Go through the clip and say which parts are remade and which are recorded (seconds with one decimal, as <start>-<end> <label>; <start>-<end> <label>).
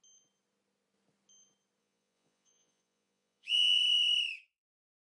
0.0-1.8 recorded; 1.8-3.8 remade; 3.8-5.1 recorded